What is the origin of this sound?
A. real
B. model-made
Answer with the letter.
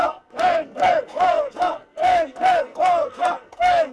B